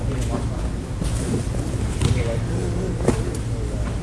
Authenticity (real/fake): real